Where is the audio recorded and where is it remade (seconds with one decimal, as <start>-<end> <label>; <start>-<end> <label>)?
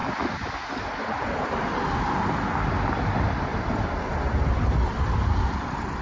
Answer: 0.0-6.0 recorded